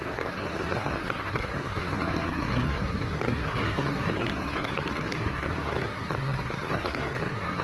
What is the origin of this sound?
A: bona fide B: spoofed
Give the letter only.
B